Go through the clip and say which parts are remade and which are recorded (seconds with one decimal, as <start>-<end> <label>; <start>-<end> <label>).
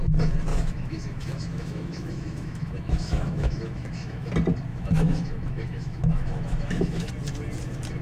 0.0-0.5 recorded; 0.5-4.3 remade; 4.3-4.7 recorded; 4.7-7.1 remade; 7.1-8.0 recorded